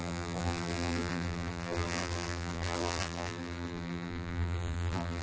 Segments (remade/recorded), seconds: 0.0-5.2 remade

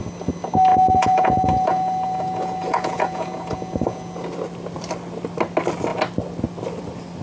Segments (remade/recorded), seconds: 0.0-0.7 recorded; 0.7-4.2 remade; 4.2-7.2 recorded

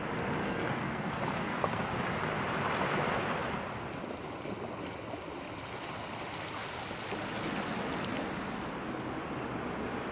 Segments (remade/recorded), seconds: 0.0-0.4 recorded; 0.4-1.1 remade; 1.1-1.5 recorded; 1.5-2.0 remade; 2.0-10.1 recorded

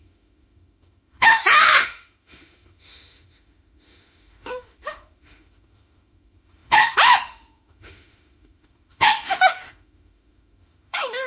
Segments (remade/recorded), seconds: 0.0-11.3 remade